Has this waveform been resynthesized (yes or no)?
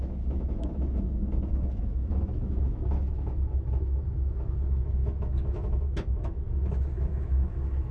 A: yes